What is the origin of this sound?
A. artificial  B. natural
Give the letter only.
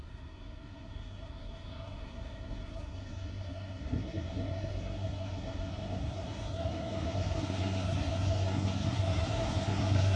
A